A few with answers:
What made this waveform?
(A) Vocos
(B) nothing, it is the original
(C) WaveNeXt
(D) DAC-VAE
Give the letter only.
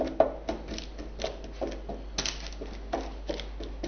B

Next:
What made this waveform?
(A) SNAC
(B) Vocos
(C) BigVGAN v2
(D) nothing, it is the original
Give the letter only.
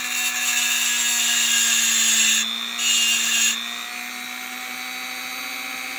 D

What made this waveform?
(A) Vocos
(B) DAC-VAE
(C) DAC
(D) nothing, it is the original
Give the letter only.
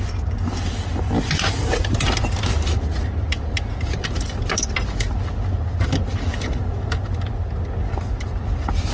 D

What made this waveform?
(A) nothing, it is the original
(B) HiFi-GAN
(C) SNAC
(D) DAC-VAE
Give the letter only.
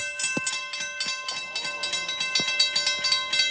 A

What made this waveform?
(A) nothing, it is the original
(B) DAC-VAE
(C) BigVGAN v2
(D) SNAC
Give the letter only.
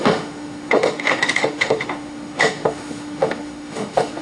B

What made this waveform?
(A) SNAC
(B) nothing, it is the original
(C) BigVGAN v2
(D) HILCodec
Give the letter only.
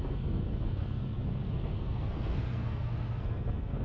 A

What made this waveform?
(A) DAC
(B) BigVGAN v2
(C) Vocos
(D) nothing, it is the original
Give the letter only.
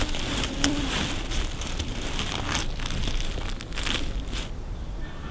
D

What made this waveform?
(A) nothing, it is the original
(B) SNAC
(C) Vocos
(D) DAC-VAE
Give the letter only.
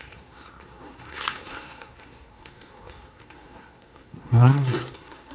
B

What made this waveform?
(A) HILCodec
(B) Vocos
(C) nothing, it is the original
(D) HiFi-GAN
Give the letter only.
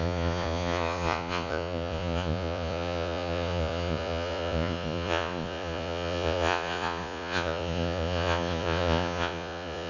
B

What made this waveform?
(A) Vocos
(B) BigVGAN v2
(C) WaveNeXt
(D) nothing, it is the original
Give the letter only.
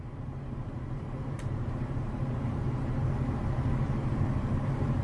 B